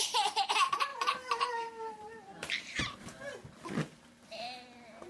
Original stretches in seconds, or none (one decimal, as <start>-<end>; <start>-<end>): none